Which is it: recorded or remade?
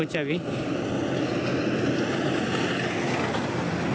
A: recorded